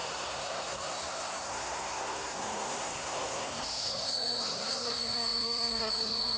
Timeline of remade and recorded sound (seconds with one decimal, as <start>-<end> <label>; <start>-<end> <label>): 0.0-6.4 remade